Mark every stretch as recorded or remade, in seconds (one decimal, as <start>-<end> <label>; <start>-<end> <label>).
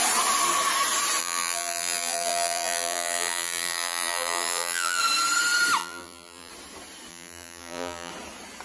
0.0-1.2 recorded; 1.2-5.0 remade; 5.0-5.8 recorded; 5.8-6.5 remade; 6.5-7.1 recorded; 7.1-8.1 remade; 8.1-8.6 recorded